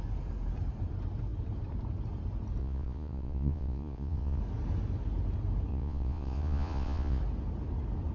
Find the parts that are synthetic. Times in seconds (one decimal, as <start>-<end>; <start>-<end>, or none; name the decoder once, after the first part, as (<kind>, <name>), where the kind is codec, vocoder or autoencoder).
2.6-4.4 (vocoder, Vocos); 5.7-7.2